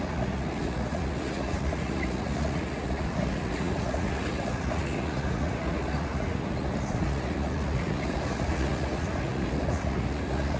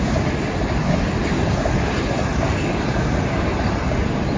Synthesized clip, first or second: first